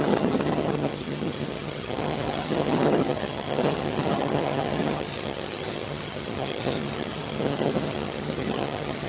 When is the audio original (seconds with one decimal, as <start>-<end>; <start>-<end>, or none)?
none